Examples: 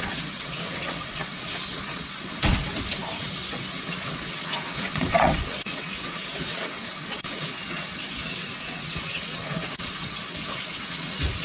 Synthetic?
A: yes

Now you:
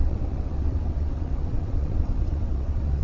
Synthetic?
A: yes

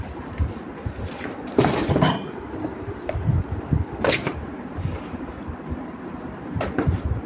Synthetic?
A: yes